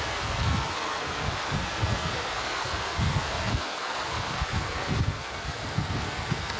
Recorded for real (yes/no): no